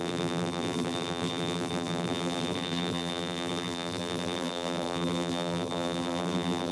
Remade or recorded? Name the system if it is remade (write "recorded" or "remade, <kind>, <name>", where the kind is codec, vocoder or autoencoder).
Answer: remade, vocoder, BigVGAN v2